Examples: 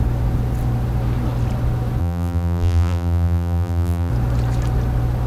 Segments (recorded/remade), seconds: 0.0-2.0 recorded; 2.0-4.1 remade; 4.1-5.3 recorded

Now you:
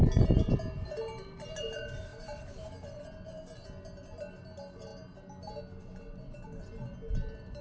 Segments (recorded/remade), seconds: 0.0-7.6 recorded

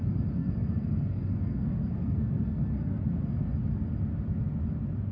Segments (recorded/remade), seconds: 0.0-0.4 recorded; 0.4-3.5 remade; 3.5-5.1 recorded

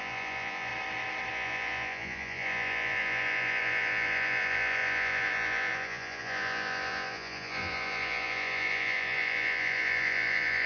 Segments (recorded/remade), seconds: 0.0-0.7 remade; 0.7-1.3 recorded; 1.3-10.7 remade